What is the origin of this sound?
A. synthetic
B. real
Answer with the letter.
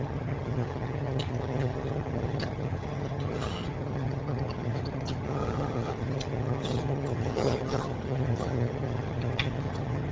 A